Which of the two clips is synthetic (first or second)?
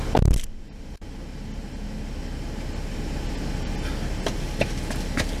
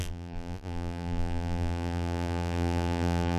second